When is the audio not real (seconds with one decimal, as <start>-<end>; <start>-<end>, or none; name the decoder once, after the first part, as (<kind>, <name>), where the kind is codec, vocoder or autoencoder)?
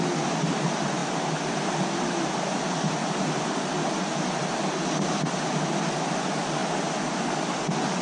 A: none